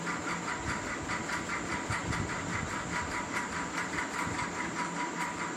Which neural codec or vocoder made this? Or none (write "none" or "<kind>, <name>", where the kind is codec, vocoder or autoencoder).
none